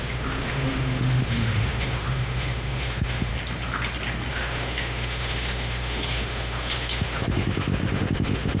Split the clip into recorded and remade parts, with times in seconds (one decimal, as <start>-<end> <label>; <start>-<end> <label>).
0.0-3.3 remade; 3.3-4.3 recorded; 4.3-8.6 remade